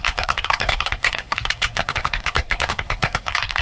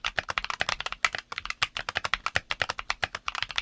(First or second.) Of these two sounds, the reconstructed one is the first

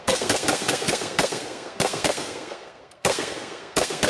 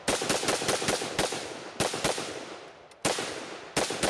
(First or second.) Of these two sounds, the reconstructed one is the first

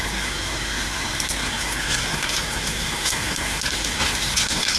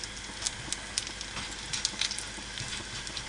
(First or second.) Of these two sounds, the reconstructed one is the first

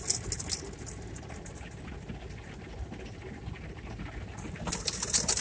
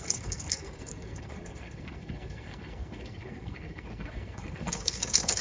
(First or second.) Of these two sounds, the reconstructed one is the second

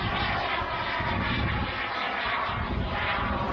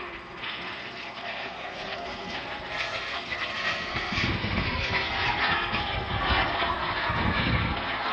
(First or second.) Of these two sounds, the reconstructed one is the second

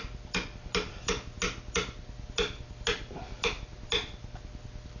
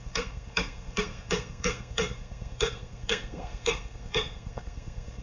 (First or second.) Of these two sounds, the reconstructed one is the second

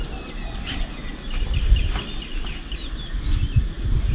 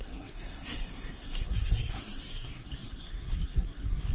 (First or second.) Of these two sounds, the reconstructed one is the second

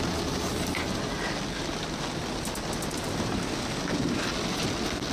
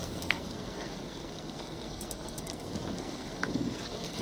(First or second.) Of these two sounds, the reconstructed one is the second